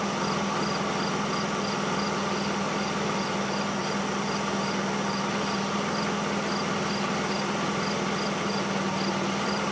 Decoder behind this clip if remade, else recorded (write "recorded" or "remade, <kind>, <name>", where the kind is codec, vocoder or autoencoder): recorded